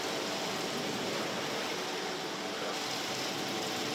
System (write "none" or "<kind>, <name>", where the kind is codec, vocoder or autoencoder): none